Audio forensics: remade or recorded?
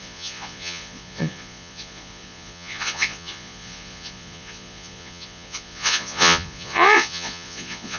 remade